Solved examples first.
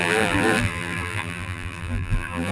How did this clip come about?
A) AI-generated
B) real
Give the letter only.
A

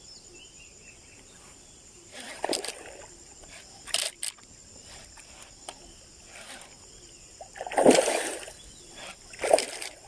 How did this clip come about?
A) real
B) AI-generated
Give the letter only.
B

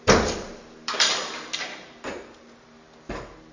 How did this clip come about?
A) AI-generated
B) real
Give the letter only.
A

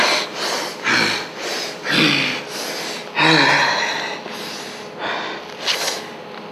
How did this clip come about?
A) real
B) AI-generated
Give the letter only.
A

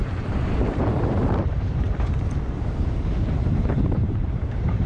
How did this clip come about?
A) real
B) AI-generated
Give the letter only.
B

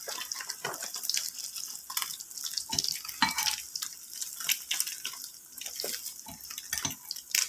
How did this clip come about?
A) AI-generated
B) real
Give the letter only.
B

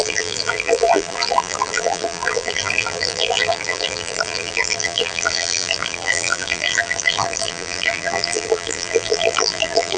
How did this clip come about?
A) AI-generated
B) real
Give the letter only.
A